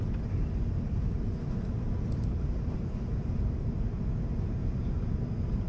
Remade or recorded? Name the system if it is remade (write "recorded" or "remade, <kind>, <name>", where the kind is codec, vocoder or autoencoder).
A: recorded